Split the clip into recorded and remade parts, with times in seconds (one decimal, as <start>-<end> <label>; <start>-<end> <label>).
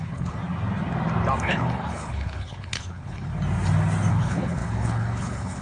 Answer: 0.0-0.4 remade; 0.4-1.4 recorded; 1.4-3.3 remade; 3.3-4.1 recorded; 4.1-5.6 remade